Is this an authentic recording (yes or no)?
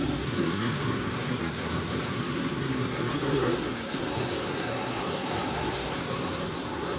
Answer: no